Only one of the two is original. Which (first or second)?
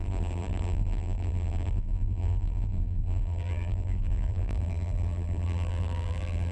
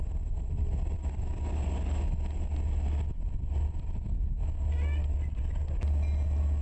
second